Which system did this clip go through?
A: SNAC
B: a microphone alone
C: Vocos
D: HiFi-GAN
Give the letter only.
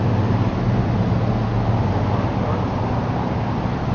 B